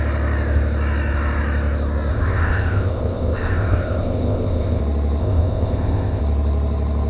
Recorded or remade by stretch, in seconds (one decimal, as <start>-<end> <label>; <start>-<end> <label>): 0.0-2.1 recorded; 2.1-4.8 remade; 4.8-5.2 recorded; 5.2-6.2 remade; 6.2-7.1 recorded